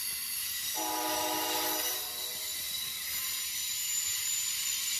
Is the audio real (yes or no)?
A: yes